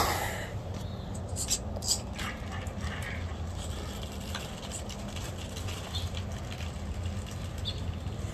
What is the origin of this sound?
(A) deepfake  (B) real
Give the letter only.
B